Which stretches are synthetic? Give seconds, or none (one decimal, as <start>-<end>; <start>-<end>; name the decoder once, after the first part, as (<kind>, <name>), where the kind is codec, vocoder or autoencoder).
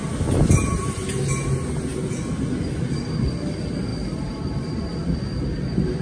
0.0-1.2 (vocoder, BigVGAN v2); 3.9-4.8